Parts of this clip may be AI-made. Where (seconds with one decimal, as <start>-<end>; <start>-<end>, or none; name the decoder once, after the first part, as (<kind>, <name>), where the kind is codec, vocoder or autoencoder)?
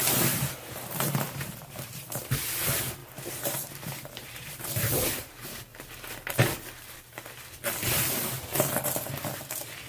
0.0-5.7 (vocoder, BigVGAN v2)